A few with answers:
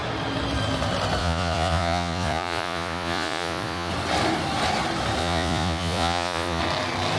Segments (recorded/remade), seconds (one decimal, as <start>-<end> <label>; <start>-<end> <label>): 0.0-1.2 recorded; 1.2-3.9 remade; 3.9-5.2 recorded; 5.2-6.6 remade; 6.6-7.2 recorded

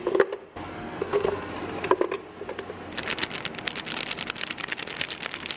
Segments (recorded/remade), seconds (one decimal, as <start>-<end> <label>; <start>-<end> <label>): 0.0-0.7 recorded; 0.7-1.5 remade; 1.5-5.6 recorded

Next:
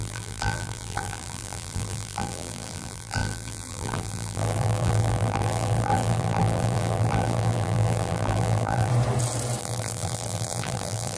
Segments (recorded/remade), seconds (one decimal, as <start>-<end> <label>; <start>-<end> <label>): 0.0-8.9 remade; 8.9-9.6 recorded; 9.6-11.2 remade

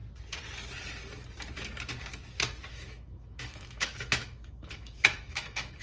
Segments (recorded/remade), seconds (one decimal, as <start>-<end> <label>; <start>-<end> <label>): 0.0-2.7 recorded; 2.7-5.8 remade